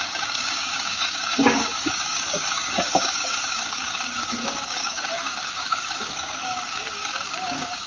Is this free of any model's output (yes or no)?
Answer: no